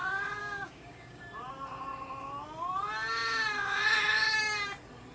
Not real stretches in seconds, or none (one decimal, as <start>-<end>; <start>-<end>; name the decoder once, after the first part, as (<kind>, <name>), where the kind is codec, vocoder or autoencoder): 0.4-1.2 (codec, DAC)